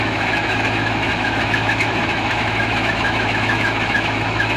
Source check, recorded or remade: remade